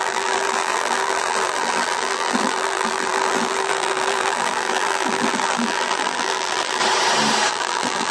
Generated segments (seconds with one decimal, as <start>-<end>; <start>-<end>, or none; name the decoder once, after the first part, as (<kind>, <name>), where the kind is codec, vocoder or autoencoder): 0.0-6.8 (vocoder, BigVGAN v2); 7.5-8.1